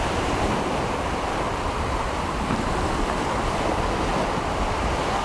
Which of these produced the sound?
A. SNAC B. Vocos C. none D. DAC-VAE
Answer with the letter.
C